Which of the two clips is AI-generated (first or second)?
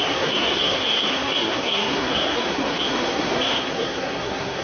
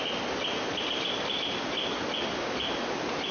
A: first